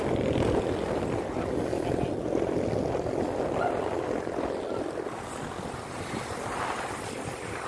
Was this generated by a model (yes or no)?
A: no